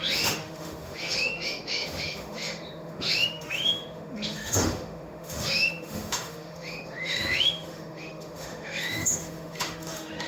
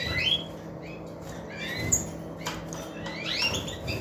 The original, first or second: second